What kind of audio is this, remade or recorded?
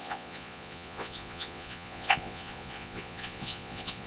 remade